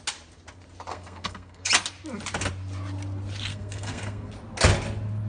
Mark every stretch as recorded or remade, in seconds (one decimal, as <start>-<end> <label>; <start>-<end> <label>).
0.0-0.9 recorded; 0.9-1.7 remade; 1.7-3.5 recorded; 3.5-4.3 remade; 4.3-5.3 recorded